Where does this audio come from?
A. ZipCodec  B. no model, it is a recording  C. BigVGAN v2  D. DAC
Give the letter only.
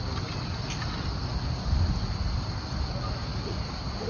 B